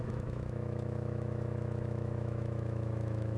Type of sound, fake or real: fake